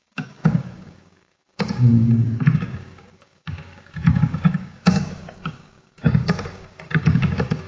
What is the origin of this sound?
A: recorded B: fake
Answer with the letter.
B